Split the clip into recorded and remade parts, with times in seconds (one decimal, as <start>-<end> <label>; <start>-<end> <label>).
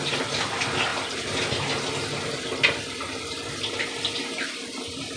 0.0-5.2 recorded